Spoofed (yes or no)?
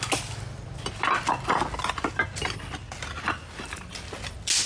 no